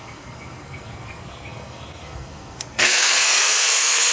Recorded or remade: remade